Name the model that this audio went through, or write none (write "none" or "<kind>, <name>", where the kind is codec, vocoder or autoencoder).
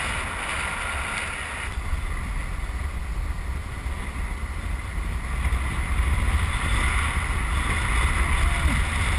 none